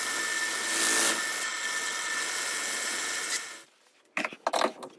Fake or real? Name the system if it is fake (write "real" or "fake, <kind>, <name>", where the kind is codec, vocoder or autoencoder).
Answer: real